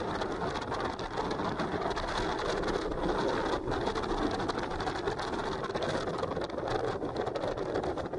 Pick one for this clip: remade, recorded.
recorded